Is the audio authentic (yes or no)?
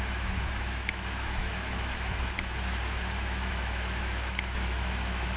no